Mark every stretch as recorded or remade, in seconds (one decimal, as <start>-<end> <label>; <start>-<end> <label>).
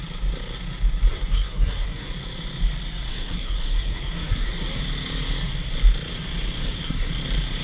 0.0-1.1 recorded; 1.1-2.1 remade; 2.1-3.1 recorded; 3.1-4.8 remade; 4.8-6.6 recorded; 6.6-7.1 remade; 7.1-7.6 recorded